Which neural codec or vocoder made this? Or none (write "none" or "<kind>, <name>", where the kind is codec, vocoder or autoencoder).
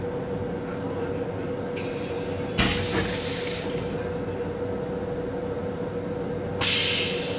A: none